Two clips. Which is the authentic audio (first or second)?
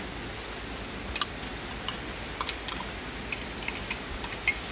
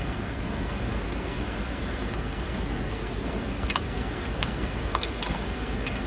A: first